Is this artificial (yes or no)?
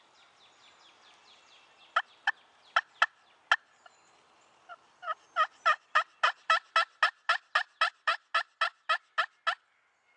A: no